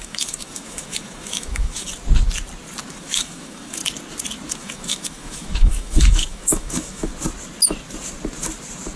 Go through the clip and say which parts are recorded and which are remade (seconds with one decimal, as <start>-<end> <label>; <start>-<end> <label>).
0.0-1.9 remade; 1.9-2.9 recorded; 2.9-3.8 remade; 3.8-4.5 recorded; 4.5-7.1 remade; 7.1-9.0 recorded